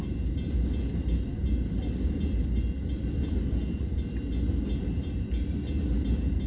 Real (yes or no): yes